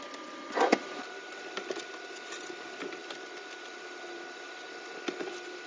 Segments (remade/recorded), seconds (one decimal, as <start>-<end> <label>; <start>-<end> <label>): 0.0-5.7 recorded